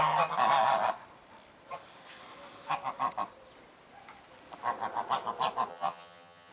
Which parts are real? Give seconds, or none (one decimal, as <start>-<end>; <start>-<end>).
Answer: 0.0-5.7